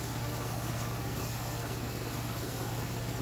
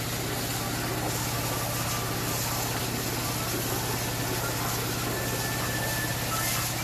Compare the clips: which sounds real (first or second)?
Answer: second